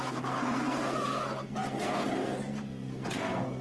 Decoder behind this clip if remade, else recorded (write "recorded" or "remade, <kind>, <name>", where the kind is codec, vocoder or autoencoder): remade, codec, SNAC